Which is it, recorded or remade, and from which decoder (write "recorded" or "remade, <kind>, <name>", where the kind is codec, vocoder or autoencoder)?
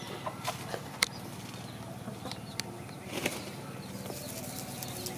recorded